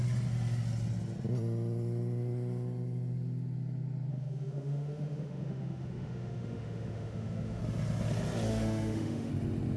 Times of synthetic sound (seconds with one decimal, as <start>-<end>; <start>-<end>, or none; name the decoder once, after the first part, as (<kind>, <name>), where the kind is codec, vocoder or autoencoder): 4.1-7.6 (autoencoder, DAC-VAE); 8.5-9.3